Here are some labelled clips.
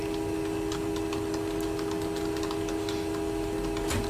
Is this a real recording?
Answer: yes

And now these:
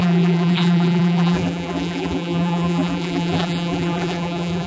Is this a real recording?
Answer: no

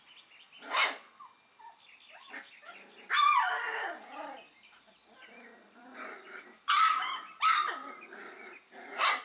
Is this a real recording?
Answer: no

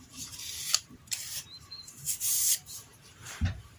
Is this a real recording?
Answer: no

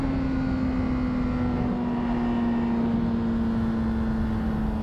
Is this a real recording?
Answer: yes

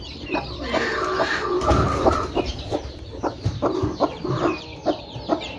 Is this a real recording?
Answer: no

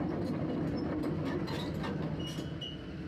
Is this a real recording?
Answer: yes